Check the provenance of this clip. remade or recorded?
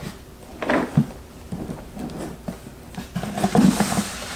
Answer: remade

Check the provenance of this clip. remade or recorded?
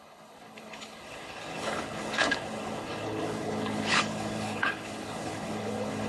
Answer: remade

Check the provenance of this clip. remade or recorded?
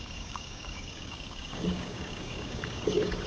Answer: remade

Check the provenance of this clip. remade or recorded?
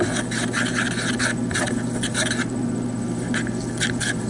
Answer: recorded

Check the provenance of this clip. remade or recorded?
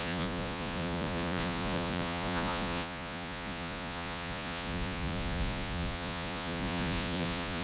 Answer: remade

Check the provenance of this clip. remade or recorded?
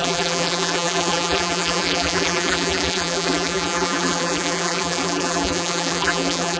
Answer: remade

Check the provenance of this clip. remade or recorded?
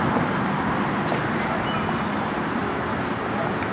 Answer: recorded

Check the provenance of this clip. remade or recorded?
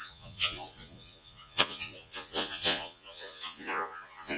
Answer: remade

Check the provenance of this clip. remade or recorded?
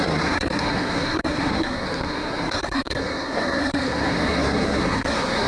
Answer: remade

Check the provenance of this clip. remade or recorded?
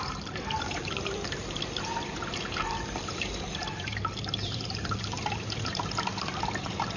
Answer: remade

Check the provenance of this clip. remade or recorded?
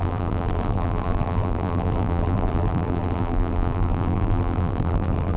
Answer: remade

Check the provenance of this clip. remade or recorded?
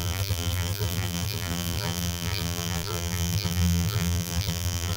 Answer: remade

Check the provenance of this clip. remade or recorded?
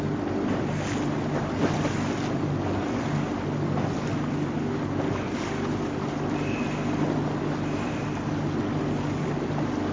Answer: recorded